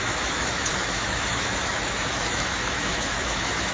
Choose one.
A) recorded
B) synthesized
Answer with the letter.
B